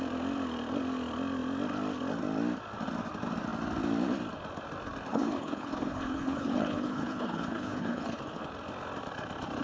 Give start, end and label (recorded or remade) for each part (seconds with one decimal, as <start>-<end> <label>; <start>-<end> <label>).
0.0-5.1 recorded; 5.1-8.5 remade; 8.5-9.6 recorded